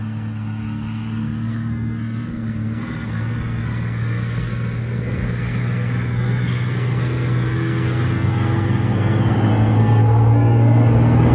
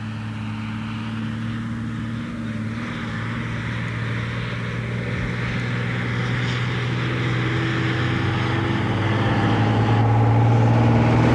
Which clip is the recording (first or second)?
second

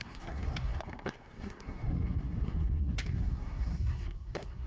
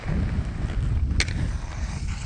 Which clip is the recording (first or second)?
second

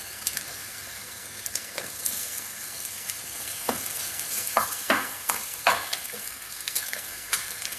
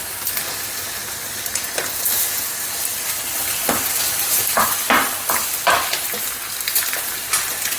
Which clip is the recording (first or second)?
second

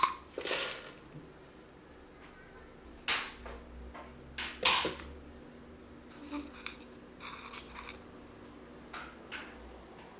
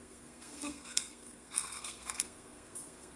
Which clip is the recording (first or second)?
first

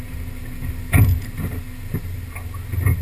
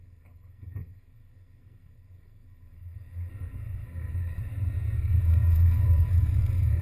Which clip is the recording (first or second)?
first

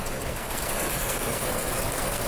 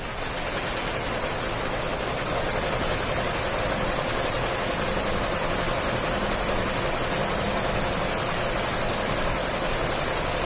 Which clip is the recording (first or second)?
second